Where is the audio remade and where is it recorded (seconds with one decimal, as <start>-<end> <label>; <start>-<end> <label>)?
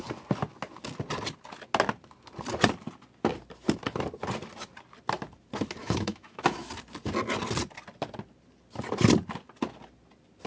0.0-5.8 recorded; 5.8-6.7 remade; 6.7-10.5 recorded